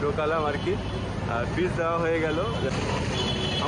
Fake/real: real